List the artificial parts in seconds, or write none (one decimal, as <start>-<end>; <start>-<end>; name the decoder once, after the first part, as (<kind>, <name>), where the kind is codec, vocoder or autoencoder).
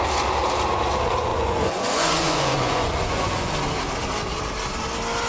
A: 1.3-3.5 (vocoder, Vocos)